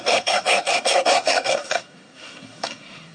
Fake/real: fake